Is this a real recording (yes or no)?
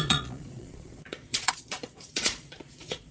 no